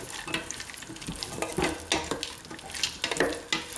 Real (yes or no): yes